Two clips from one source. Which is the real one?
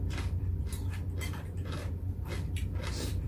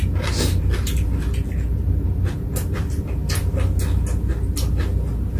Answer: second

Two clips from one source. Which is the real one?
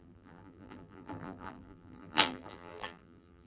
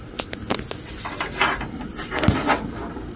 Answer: second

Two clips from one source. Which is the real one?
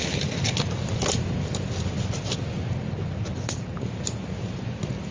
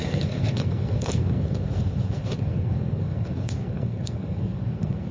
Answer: first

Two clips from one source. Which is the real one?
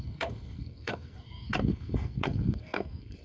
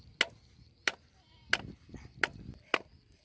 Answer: second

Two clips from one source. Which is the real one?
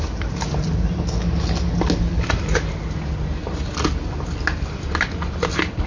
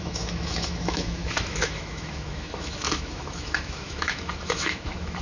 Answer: first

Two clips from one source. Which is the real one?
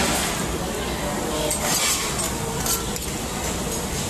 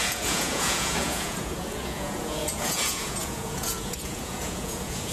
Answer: first